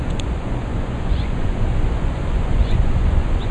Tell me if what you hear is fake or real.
fake